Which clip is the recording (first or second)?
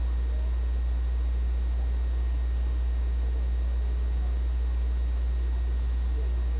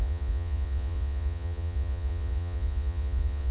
first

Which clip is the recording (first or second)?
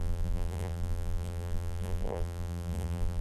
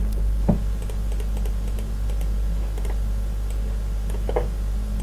second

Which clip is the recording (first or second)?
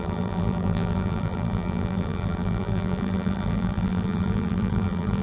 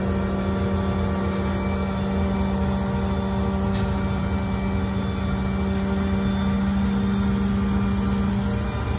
second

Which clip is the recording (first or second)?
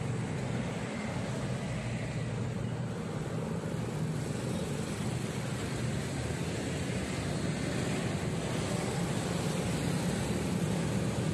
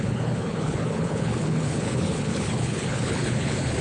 first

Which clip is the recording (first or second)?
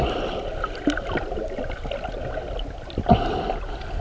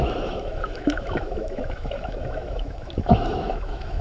first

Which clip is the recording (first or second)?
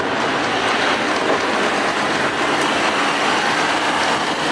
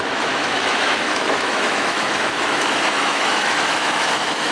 first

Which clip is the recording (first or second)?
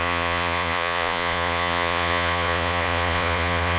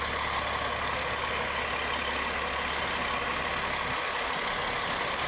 second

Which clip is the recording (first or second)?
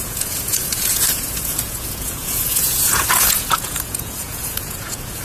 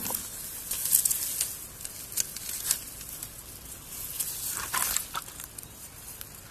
second